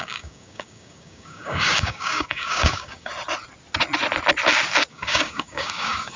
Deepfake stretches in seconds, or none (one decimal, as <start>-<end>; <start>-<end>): 0.0-3.1; 4.9-6.2